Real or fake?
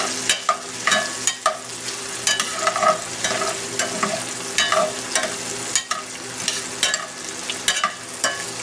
real